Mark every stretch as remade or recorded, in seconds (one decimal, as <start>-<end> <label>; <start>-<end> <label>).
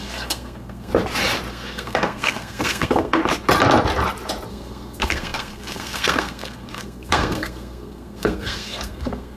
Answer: 0.0-0.9 remade; 0.9-1.5 recorded; 1.5-3.2 remade; 3.2-4.5 recorded; 4.5-9.4 remade